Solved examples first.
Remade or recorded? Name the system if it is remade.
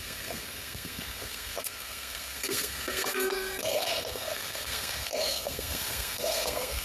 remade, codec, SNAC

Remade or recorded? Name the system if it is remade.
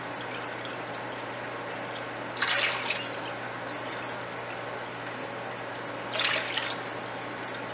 recorded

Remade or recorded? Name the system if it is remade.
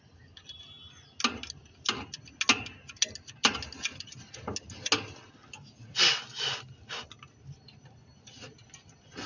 recorded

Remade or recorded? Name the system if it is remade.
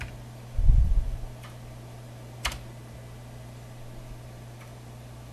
recorded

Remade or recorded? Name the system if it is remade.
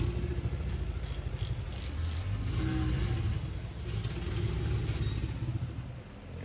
recorded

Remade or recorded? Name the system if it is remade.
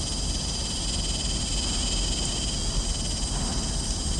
recorded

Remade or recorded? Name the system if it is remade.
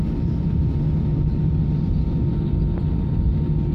recorded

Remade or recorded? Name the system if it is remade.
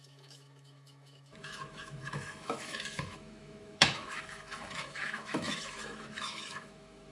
remade, autoencoder, DAC-VAE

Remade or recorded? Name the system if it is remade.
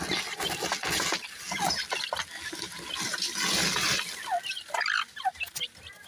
recorded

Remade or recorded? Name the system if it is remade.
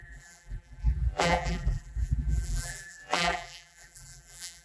remade, vocoder, BigVGAN v2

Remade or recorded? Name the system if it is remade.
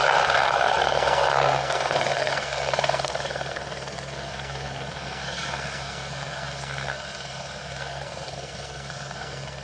remade, codec, SNAC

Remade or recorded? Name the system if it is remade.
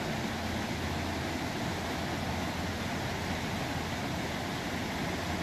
recorded